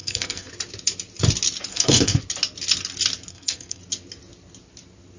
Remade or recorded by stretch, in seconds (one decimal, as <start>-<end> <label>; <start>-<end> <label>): 0.0-0.5 remade; 0.5-1.7 recorded; 1.7-2.2 remade; 2.2-3.3 recorded; 3.3-3.8 remade; 3.8-5.2 recorded